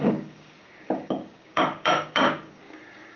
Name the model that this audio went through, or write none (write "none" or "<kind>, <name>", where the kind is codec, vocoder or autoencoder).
codec, DAC